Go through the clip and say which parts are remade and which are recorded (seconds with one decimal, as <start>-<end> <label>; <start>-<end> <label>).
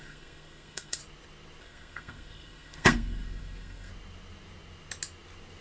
0.0-1.0 remade; 1.0-1.6 recorded; 1.6-3.9 remade; 3.9-5.6 recorded